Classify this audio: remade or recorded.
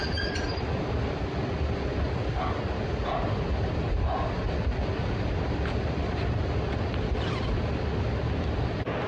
recorded